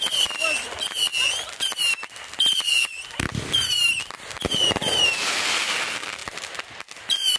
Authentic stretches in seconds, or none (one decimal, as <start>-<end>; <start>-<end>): 0.0-7.4